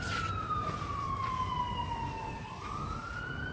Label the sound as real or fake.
real